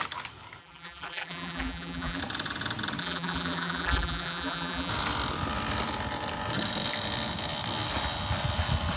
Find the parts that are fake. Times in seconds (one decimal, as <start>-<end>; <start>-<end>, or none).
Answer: 0.6-2.2; 3.0-4.9